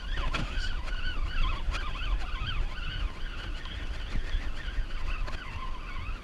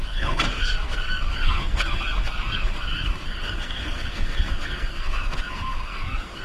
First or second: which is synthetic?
second